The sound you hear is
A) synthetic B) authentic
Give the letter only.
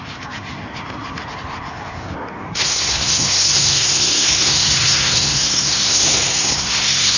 A